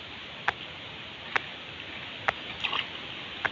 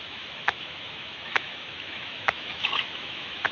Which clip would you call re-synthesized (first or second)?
second